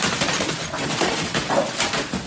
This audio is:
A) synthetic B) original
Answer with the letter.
B